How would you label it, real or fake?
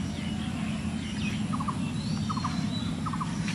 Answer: real